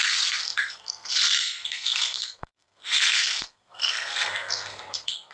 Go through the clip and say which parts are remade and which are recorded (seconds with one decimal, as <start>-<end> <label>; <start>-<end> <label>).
0.0-5.3 remade